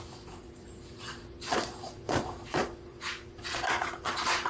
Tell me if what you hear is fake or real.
fake